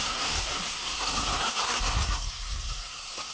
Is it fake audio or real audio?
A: fake